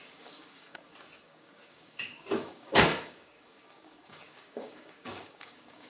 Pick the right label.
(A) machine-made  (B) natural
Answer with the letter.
A